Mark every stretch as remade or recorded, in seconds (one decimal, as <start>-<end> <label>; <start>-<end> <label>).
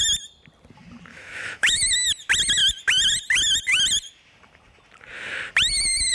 0.0-1.1 recorded; 1.1-1.8 remade; 1.8-6.1 recorded